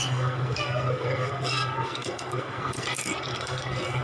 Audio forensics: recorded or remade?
remade